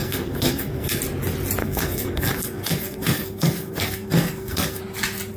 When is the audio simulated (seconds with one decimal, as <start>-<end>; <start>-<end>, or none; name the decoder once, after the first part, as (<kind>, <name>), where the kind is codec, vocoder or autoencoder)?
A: 0.0-1.0 (codec, SNAC); 1.6-4.8

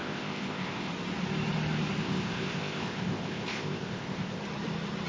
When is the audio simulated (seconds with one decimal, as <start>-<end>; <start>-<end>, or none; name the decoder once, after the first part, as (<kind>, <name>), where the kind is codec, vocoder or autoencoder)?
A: 0.0-0.9 (codec, ZipCodec); 2.0-4.4